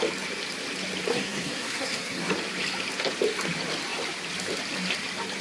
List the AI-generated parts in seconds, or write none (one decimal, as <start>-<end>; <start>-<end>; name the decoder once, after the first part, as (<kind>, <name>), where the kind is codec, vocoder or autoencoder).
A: 1.1-2.3 (codec, SNAC)